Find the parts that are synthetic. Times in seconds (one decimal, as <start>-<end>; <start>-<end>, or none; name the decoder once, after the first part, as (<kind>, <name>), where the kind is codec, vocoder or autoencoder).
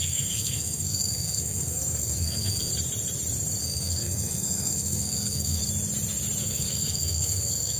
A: 0.0-2.7 (codec, SNAC); 3.6-5.6; 6.4-7.8